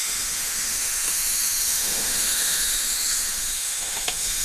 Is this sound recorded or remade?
remade